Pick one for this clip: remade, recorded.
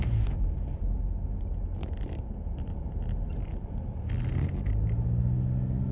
recorded